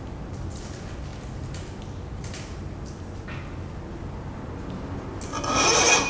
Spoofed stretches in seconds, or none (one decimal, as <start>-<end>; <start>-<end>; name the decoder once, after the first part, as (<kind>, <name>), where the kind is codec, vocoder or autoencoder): none